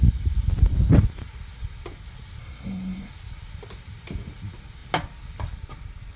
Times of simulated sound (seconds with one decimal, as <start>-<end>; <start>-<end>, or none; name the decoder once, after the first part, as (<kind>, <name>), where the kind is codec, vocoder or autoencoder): 2.4-3.1 (codec, SNAC)